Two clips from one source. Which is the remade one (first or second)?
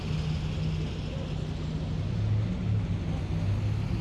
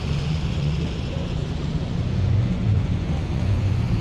second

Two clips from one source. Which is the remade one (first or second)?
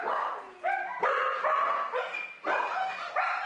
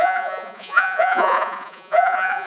second